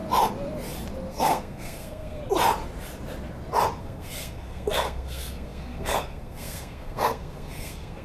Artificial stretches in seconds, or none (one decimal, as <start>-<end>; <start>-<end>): 1.1-2.2; 3.8-8.0